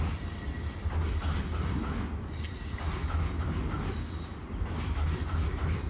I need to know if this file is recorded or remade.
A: recorded